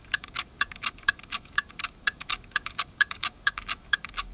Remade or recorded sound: remade